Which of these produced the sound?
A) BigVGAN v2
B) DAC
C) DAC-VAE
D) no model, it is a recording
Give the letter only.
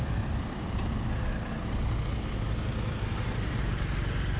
D